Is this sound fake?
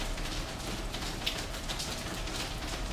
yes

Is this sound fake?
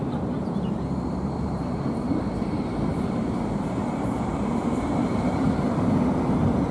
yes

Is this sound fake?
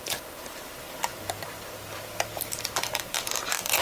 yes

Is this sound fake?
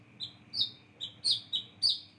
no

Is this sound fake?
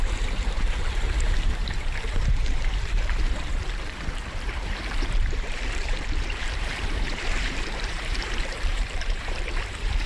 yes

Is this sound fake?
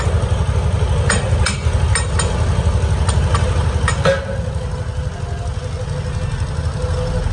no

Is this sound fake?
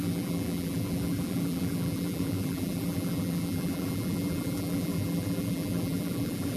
yes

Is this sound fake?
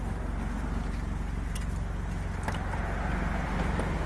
no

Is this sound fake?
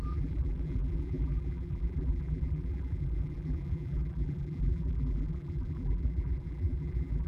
yes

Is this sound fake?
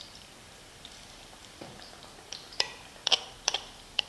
yes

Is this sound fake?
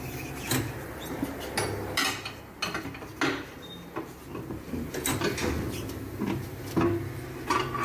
no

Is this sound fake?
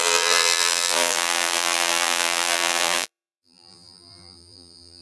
yes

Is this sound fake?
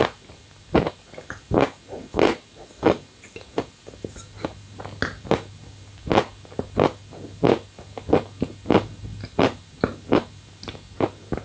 no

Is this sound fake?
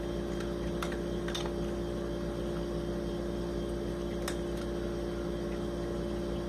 no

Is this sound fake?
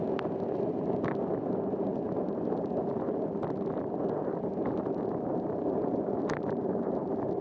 no